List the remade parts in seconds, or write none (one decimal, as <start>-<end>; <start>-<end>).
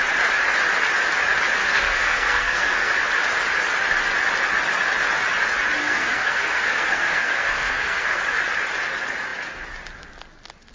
1.6-2.9; 5.8-8.2